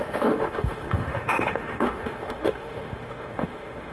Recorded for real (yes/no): no